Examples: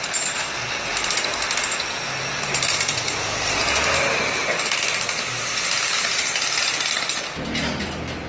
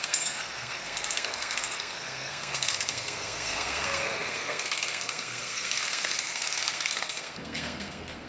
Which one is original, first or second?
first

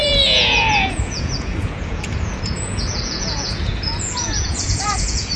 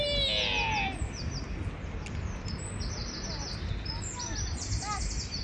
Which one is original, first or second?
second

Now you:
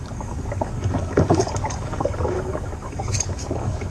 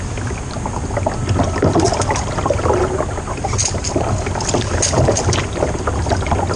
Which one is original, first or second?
second